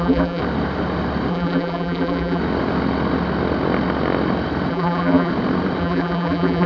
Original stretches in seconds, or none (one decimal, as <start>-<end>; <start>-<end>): 0.4-1.3; 2.4-4.7; 5.3-5.8